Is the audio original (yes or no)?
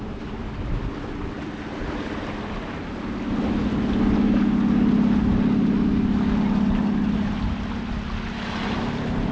yes